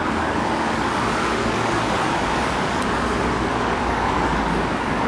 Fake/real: fake